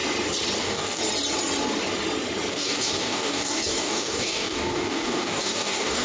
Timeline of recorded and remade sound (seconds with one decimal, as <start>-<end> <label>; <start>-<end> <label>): 0.0-0.6 recorded; 0.6-1.0 remade; 1.0-2.5 recorded; 2.5-6.0 remade